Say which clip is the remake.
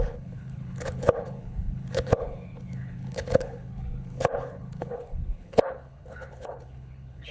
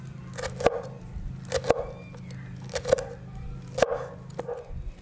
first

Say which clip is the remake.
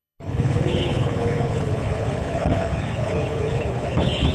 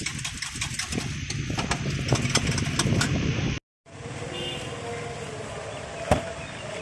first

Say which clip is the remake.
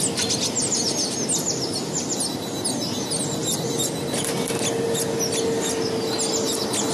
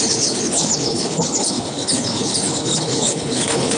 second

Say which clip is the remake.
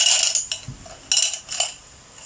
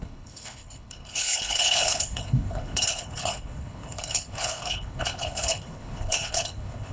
second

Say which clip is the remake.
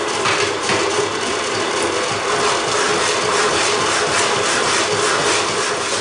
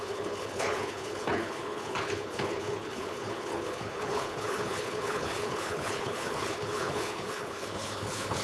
second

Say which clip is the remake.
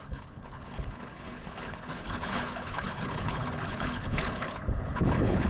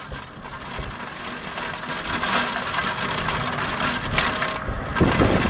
first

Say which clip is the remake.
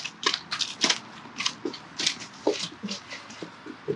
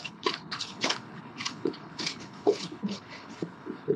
second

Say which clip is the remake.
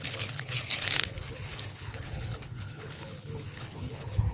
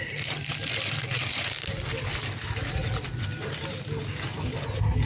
first